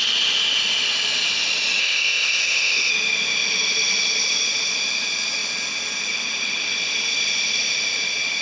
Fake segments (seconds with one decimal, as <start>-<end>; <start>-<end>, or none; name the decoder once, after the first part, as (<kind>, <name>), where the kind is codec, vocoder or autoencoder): 1.8-2.9 (codec, ZipCodec)